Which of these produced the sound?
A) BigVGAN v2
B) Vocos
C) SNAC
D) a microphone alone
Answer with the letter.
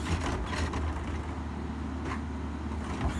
D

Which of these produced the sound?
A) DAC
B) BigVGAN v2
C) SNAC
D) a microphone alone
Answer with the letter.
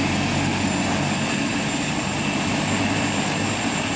D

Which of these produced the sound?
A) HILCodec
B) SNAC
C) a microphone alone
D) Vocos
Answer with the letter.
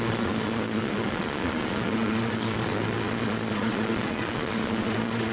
D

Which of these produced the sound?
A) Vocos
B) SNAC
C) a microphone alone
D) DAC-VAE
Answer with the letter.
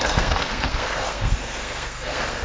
B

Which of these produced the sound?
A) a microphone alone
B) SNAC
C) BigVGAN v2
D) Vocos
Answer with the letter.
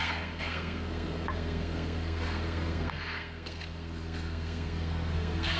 B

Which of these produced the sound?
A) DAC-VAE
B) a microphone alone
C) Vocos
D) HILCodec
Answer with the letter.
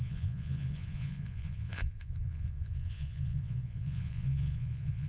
C